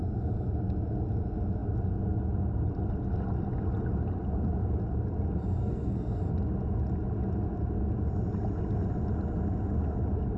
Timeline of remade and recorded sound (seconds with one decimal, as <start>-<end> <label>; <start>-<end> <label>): 0.0-5.6 recorded; 5.6-6.2 remade; 6.2-10.4 recorded